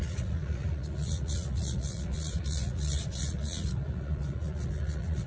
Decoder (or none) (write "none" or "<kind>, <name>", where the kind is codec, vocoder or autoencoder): vocoder, Vocos